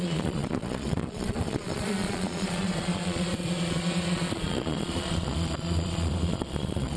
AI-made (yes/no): yes